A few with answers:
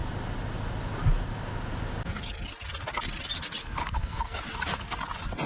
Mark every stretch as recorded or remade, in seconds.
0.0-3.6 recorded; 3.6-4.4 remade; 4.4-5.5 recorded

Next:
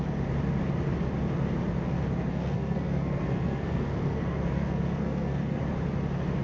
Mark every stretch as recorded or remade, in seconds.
0.0-2.3 recorded; 2.3-5.6 remade; 5.6-6.4 recorded

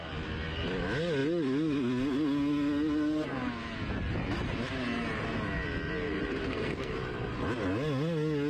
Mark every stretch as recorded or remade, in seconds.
0.0-6.4 recorded; 6.4-6.9 remade; 6.9-8.5 recorded

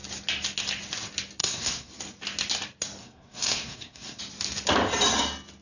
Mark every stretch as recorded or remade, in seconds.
0.0-1.4 recorded; 1.4-1.9 remade; 1.9-3.0 recorded; 3.0-4.2 remade; 4.2-5.6 recorded

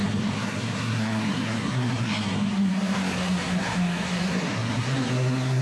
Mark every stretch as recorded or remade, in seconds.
0.0-5.6 remade

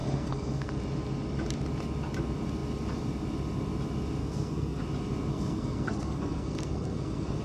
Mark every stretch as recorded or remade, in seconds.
0.0-0.8 remade; 0.8-4.2 recorded; 4.2-4.8 remade; 4.8-5.3 recorded; 5.3-7.4 remade